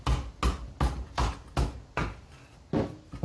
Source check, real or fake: real